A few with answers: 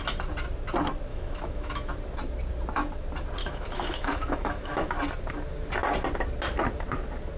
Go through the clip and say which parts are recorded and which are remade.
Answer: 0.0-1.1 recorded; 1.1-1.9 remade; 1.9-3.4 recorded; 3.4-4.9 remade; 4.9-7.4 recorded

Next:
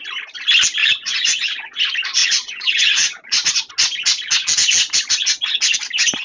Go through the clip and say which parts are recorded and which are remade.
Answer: 0.0-0.8 recorded; 0.8-1.8 remade; 1.8-2.2 recorded; 2.2-3.7 remade; 3.7-6.2 recorded

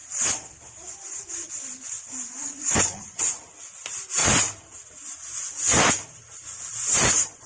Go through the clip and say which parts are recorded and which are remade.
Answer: 0.0-2.4 recorded; 2.4-3.8 remade; 3.8-7.5 recorded